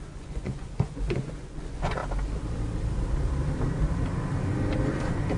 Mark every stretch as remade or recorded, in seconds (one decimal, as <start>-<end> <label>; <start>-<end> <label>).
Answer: 0.0-2.0 remade; 2.0-5.4 recorded